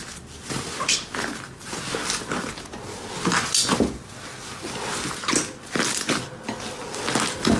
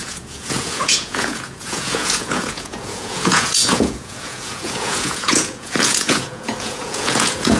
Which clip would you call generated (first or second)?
second